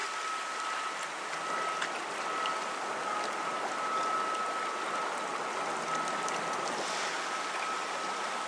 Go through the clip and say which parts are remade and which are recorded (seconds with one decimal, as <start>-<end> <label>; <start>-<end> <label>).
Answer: 0.0-8.5 recorded